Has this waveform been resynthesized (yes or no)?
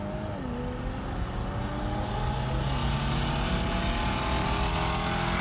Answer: no